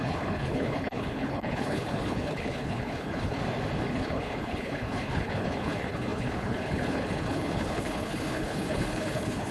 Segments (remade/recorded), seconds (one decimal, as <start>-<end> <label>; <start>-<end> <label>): 0.0-3.4 remade; 3.4-3.9 recorded; 3.9-9.5 remade